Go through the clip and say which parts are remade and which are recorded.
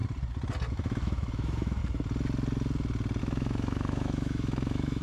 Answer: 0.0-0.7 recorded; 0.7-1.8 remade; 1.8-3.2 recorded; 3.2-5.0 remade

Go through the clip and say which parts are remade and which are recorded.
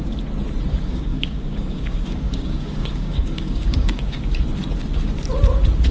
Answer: 0.0-0.7 recorded; 0.7-4.2 remade; 4.2-5.9 recorded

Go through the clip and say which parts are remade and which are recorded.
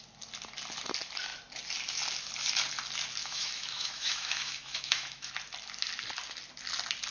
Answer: 0.0-3.2 recorded; 3.2-5.3 remade; 5.3-7.1 recorded